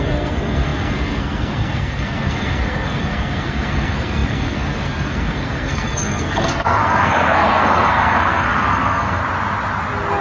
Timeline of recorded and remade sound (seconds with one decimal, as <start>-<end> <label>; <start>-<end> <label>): 0.0-9.2 remade; 9.2-10.2 recorded